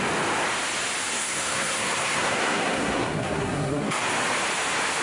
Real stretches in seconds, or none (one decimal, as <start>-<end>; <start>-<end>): 0.0-1.1; 4.1-5.0